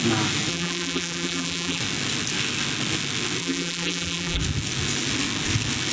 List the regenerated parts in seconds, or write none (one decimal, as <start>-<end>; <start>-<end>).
0.5-1.8; 3.4-4.4